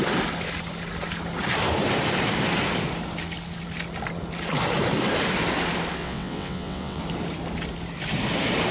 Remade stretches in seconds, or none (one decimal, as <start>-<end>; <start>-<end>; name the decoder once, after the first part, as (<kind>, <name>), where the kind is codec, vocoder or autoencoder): 6.0-7.0 (vocoder, WaveNeXt)